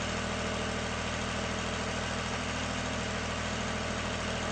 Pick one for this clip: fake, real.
real